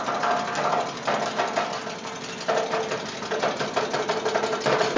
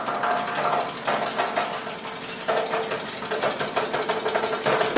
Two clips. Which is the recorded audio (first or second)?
second